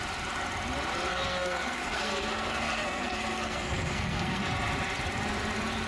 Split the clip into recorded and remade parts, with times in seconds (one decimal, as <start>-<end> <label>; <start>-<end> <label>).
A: 0.0-1.1 recorded; 1.1-4.4 remade; 4.4-5.9 recorded

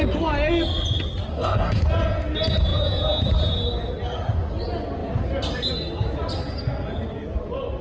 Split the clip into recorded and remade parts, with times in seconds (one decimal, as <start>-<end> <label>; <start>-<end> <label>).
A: 0.0-1.3 recorded; 1.3-1.8 remade; 1.8-7.8 recorded

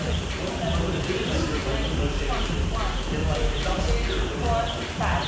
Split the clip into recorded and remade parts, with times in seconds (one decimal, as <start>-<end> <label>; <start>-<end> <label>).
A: 0.0-3.2 recorded; 3.2-3.8 remade; 3.8-5.3 recorded

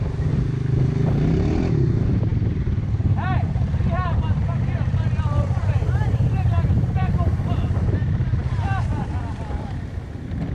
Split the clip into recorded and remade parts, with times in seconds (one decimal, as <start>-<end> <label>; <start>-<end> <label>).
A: 0.0-2.3 recorded; 2.3-7.1 remade; 7.1-10.5 recorded

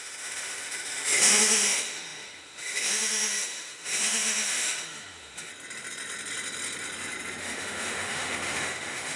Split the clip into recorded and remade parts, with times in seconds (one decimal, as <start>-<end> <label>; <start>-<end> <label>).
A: 0.0-5.5 remade; 5.5-7.4 recorded; 7.4-9.2 remade